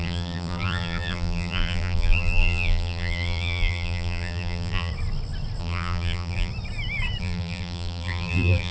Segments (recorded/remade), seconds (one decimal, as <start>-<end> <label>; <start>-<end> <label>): 0.0-4.9 remade; 4.9-5.6 recorded; 5.6-6.5 remade; 6.5-7.2 recorded; 7.2-8.7 remade